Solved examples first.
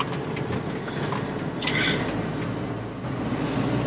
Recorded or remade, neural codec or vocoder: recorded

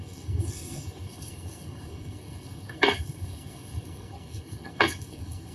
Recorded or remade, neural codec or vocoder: remade, codec, SNAC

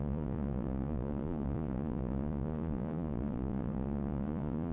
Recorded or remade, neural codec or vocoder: remade, vocoder, Vocos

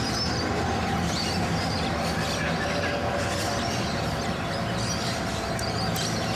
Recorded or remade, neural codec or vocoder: recorded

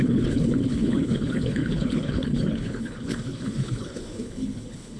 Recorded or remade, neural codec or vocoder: remade, codec, HILCodec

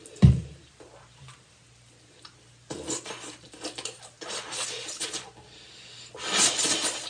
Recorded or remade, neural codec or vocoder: recorded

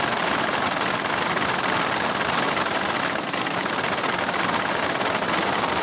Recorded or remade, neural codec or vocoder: recorded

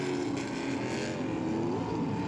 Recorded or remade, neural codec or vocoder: recorded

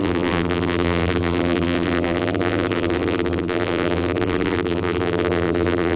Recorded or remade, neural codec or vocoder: remade, vocoder, BigVGAN v2